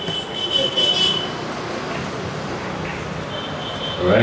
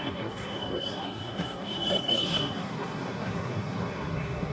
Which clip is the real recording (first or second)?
first